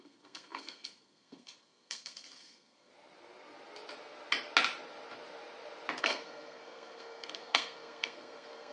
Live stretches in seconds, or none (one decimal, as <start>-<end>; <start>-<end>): 2.9-6.0